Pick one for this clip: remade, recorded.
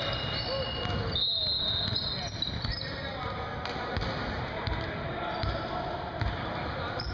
recorded